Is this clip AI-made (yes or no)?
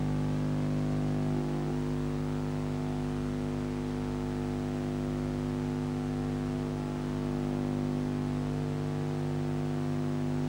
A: no